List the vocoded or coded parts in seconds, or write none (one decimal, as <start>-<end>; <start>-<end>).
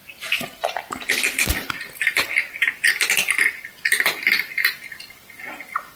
none